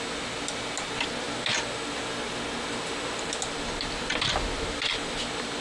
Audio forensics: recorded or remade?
recorded